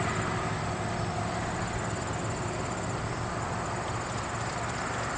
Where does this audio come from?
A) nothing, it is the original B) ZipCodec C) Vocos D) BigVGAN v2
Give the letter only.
A